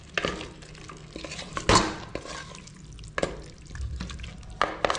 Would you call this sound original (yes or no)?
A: yes